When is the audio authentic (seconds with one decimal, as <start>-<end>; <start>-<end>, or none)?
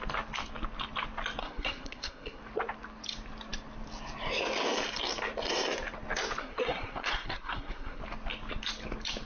0.0-1.4; 2.4-6.4; 8.0-9.3